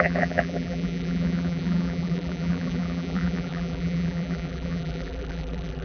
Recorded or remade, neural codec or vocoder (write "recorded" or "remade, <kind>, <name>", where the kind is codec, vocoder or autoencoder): remade, vocoder, BigVGAN v2